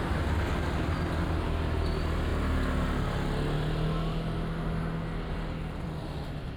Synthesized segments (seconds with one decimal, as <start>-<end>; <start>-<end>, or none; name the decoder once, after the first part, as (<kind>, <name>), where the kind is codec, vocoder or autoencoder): none